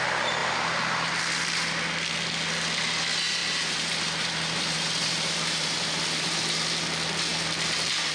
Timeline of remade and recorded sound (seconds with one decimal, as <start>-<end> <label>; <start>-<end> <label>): 0.0-0.4 recorded; 0.4-1.2 remade; 1.2-3.4 recorded; 3.4-6.4 remade; 6.4-8.1 recorded